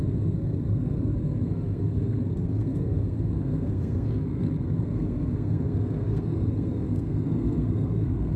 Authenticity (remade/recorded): remade